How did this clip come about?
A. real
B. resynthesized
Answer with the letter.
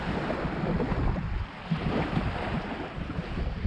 B